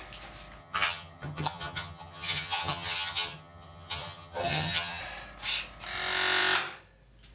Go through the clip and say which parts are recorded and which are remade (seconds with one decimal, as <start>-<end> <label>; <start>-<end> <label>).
0.0-0.6 recorded; 0.6-5.0 remade; 5.0-7.3 recorded